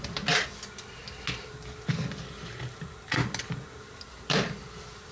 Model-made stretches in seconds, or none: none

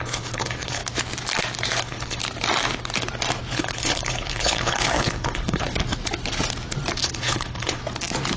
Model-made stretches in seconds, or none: 0.0-0.8; 1.8-2.2; 3.5-5.7; 7.0-7.8

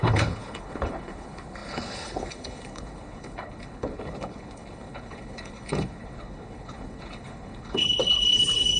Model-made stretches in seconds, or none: 0.0-8.8

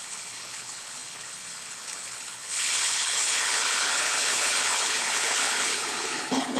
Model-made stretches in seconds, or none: 0.0-6.6

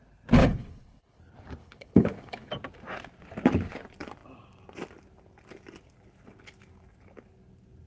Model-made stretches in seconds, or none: 0.4-1.2; 1.6-2.5

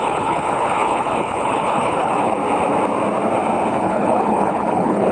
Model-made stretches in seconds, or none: 0.0-2.4; 3.7-5.1

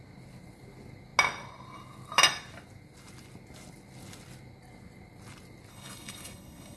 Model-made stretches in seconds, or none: 5.7-6.8

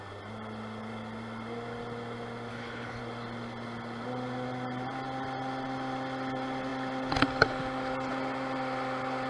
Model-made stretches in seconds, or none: 2.5-3.0